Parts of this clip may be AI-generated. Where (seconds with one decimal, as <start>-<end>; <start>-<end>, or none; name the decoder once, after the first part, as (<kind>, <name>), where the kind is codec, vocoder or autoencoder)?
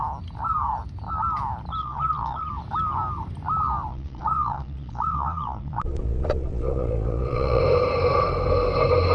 1.8-2.5 (vocoder, Vocos); 3.9-7.6